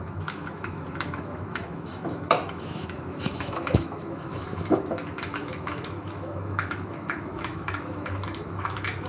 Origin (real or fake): fake